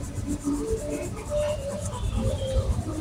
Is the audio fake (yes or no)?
yes